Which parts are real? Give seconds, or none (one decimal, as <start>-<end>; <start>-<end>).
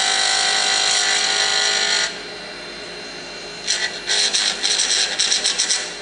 0.0-6.0